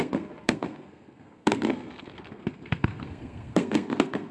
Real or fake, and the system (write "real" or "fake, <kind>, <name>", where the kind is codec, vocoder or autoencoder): fake, codec, SNAC